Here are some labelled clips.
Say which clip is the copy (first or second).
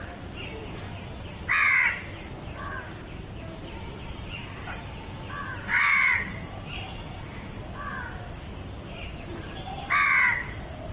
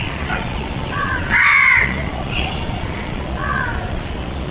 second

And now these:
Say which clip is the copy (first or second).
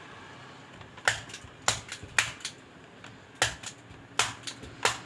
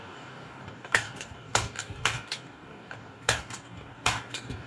second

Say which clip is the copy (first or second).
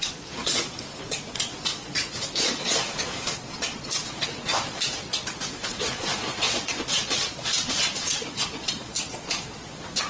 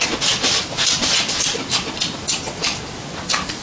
first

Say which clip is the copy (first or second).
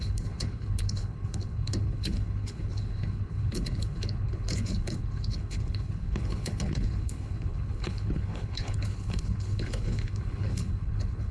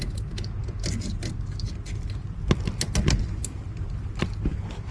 first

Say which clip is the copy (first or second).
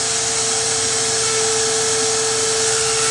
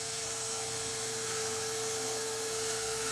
second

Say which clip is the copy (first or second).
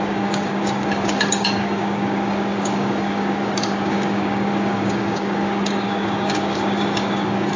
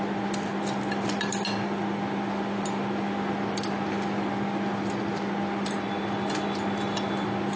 first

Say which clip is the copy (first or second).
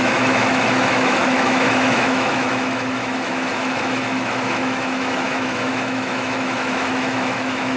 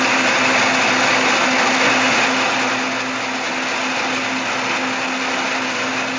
first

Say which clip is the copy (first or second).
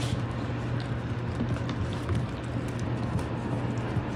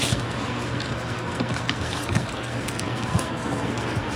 second